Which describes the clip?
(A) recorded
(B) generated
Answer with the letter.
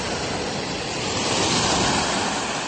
A